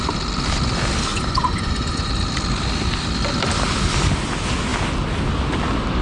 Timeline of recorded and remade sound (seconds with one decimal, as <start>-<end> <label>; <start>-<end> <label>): 0.0-1.1 recorded; 1.1-2.1 remade; 2.1-6.0 recorded

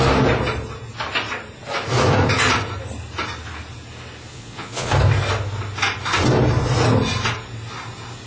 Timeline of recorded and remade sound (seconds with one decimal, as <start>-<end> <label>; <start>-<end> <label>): 0.0-4.3 recorded; 4.3-4.9 remade; 4.9-8.3 recorded

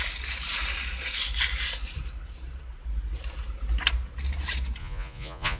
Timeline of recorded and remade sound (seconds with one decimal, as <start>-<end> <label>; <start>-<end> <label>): 0.0-4.8 recorded; 4.8-5.6 remade

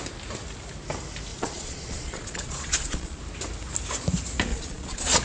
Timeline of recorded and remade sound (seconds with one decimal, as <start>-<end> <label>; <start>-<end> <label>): 0.0-1.3 recorded; 1.3-3.2 remade; 3.2-4.5 recorded; 4.5-5.2 remade